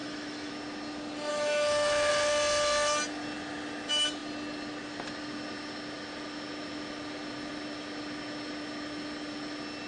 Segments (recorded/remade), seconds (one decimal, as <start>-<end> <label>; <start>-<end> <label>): 0.0-0.5 remade; 0.5-1.3 recorded; 1.3-2.1 remade; 2.1-9.9 recorded